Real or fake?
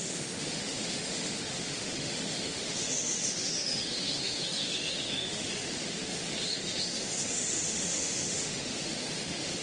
fake